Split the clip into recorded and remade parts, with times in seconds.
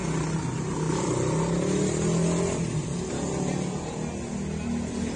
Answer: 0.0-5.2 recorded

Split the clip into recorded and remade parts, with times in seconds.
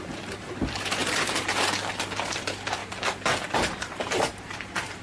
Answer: 0.0-1.0 remade; 1.0-1.9 recorded; 1.9-2.8 remade; 2.8-3.5 recorded; 3.5-5.0 remade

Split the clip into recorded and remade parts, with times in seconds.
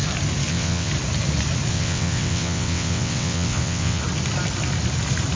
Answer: 0.0-0.5 recorded; 0.5-0.9 remade; 0.9-1.7 recorded; 1.7-4.0 remade; 4.0-5.4 recorded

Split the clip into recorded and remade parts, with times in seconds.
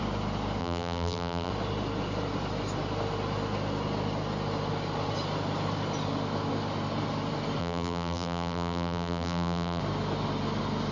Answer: 0.0-0.6 recorded; 0.6-1.5 remade; 1.5-7.6 recorded; 7.6-9.8 remade; 9.8-10.9 recorded